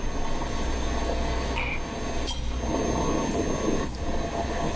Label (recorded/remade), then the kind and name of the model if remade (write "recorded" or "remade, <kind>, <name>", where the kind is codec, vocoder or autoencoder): recorded